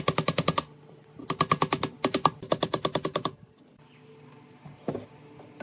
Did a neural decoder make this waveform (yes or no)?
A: no